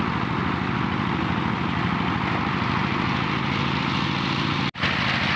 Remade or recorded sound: recorded